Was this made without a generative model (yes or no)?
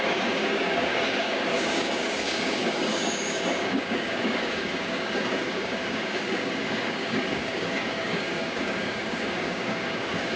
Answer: no